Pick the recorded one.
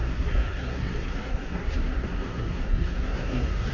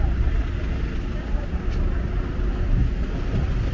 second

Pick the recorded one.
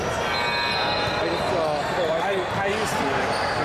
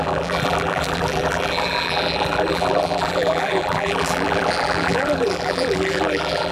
first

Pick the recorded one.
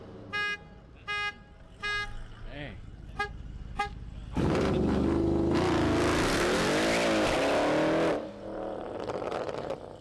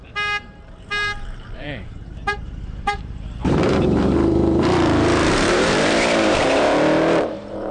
first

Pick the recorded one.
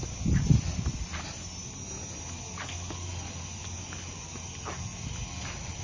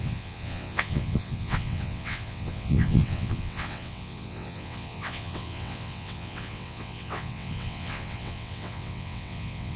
first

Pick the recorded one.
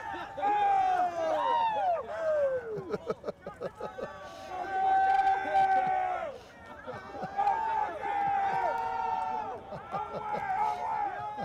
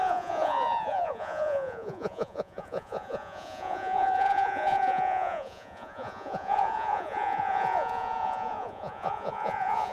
first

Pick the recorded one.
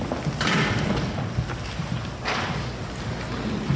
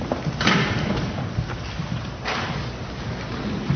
first